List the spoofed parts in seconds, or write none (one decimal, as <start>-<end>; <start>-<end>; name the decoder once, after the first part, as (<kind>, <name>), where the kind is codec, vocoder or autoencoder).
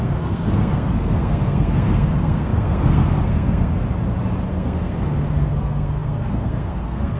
0.0-3.7 (codec, SNAC); 4.5-7.2